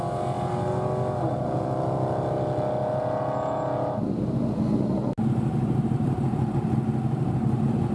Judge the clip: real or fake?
real